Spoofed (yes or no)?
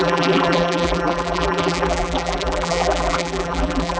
yes